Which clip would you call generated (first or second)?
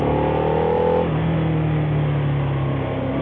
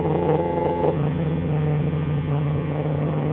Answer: second